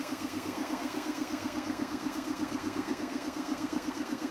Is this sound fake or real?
fake